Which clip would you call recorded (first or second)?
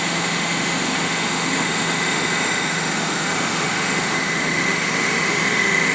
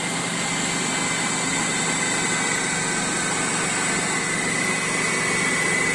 second